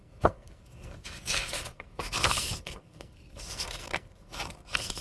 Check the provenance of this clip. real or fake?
fake